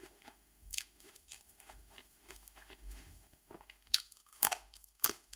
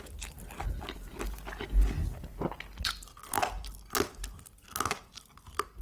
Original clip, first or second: second